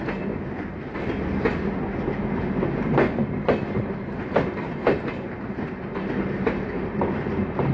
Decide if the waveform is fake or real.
real